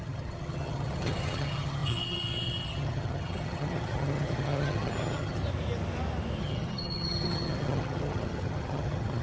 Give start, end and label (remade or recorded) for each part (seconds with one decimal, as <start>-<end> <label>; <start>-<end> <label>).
0.0-5.4 remade; 5.4-6.4 recorded; 6.4-9.2 remade